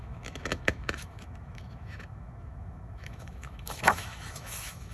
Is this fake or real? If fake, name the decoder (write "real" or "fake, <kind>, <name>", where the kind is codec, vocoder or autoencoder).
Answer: fake, autoencoder, DAC-VAE